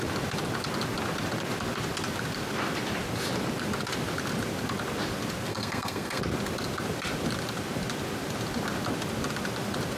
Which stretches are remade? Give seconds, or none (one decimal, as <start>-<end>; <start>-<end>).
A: 5.5-6.2